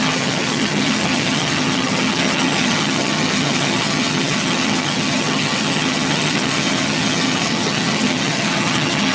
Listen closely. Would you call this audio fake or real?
fake